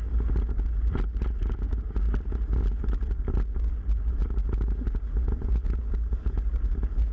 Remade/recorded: recorded